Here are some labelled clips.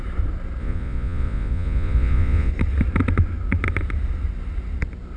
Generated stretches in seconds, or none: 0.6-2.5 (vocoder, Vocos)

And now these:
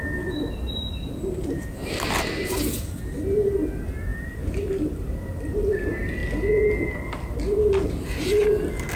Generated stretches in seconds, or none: 1.8-2.5 (vocoder, BigVGAN v2)

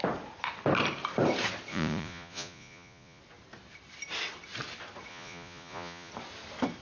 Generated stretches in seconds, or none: 1.7-3.2 (vocoder, Vocos); 5.1-6.1

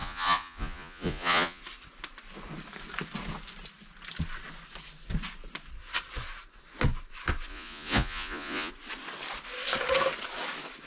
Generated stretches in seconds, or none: 0.0-1.6 (vocoder, Vocos); 7.5-8.7